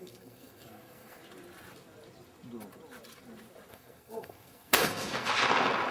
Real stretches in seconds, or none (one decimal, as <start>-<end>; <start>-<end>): 1.2-3.7; 5.3-5.9